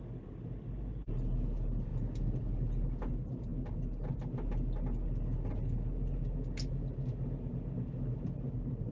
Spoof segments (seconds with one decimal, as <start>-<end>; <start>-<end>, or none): none